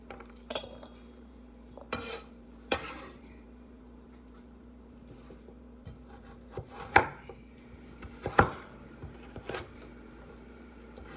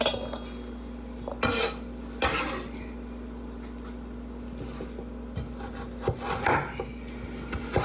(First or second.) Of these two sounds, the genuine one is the second